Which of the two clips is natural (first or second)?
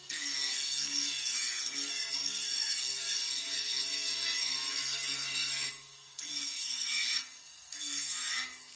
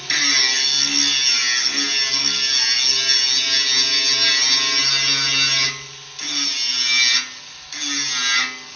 second